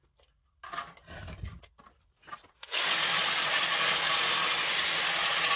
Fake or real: real